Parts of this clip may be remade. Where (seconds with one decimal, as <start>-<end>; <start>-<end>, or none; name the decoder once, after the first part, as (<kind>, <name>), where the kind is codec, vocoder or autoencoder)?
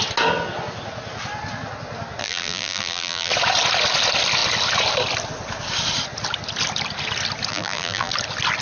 2.2-3.3 (vocoder, BigVGAN v2); 7.5-8.1